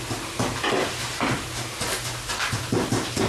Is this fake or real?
real